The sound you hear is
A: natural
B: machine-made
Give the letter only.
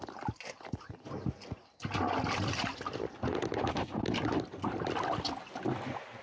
A